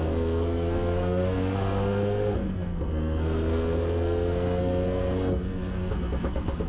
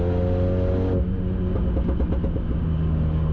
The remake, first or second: first